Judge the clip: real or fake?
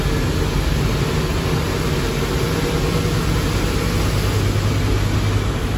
real